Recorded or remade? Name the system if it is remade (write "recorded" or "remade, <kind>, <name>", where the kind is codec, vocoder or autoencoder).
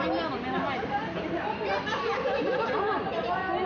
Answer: recorded